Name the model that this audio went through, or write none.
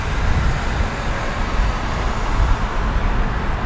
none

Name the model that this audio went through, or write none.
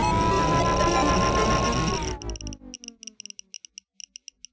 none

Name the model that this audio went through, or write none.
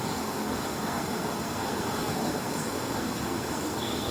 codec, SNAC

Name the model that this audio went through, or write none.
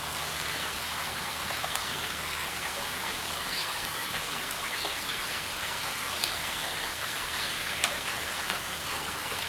codec, SNAC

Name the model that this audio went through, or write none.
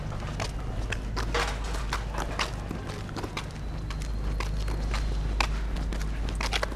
none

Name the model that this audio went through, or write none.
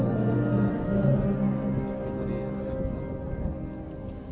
none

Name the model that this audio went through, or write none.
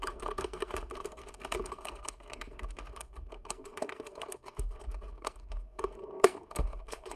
codec, SNAC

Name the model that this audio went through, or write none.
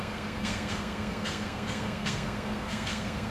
codec, SNAC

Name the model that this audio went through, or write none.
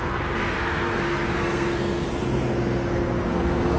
codec, SNAC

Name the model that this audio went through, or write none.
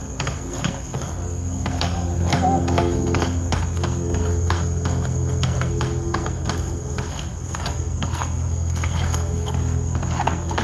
codec, SNAC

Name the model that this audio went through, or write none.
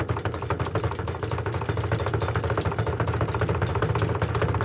none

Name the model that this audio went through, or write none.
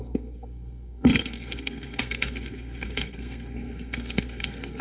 codec, SNAC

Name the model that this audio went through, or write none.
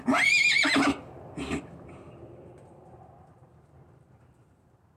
none